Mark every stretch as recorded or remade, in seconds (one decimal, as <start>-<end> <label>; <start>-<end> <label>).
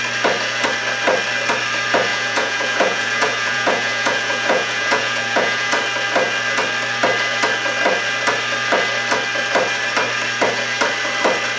0.0-2.1 recorded; 2.1-5.7 remade; 5.7-11.6 recorded